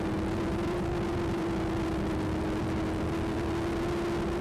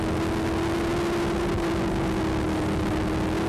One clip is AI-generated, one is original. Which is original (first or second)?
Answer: second